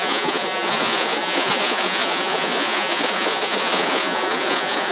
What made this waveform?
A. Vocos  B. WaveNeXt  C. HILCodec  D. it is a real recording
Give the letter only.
A